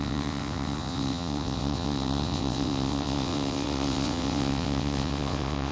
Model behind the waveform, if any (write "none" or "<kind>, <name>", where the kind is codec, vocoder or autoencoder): vocoder, WaveNeXt